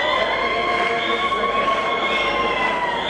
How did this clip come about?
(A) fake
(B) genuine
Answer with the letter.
B